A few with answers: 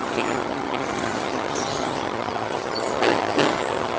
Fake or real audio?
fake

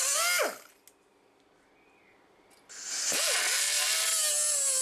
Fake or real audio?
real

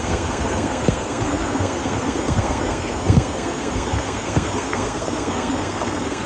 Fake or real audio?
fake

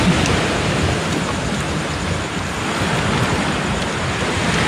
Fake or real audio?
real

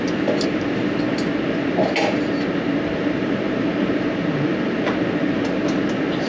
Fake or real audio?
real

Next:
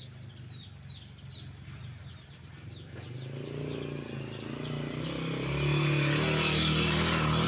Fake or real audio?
real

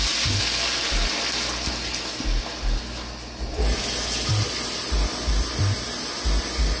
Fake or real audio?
real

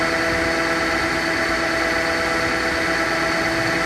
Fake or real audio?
real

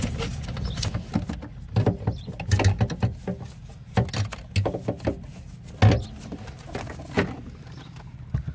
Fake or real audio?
real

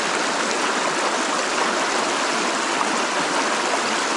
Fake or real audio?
real